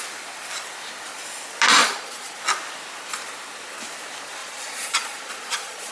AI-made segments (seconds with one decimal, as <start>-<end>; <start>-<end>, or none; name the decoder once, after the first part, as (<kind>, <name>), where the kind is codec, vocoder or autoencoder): 1.8-2.4 (vocoder, Vocos); 4.4-5.9